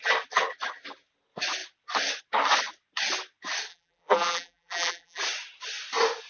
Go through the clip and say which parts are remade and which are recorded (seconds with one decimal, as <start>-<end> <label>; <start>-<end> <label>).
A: 0.0-3.7 recorded; 3.7-5.2 remade; 5.2-6.3 recorded